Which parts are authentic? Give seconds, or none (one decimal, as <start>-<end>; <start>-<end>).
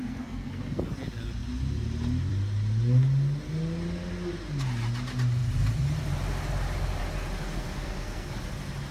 0.9-7.4; 8.3-8.9